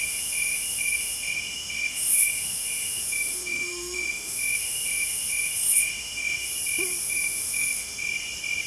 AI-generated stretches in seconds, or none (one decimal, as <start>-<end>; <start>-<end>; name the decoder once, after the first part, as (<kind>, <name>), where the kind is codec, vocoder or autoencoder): 0.0-6.5 (autoencoder, DAC-VAE); 7.0-8.0